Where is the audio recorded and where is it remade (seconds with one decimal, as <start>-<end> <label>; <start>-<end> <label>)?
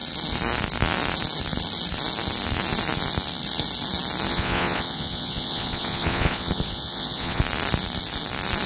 0.0-4.3 recorded; 4.3-7.4 remade; 7.4-8.7 recorded